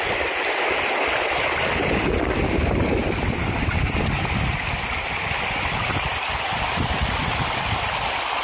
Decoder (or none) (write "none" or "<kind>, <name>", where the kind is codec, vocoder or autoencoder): none